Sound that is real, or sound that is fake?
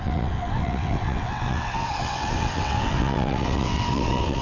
fake